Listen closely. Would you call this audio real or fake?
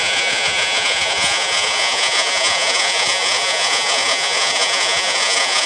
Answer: fake